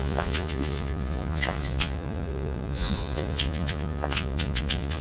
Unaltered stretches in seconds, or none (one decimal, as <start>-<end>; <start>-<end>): none